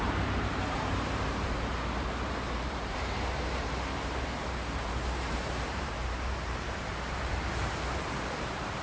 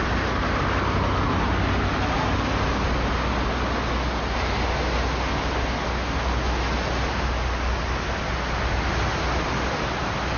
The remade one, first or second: first